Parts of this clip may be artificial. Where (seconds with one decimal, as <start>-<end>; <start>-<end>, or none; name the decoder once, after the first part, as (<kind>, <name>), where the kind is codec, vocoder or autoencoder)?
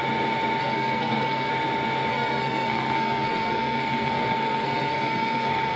0.6-1.5 (codec, SNAC); 2.1-5.8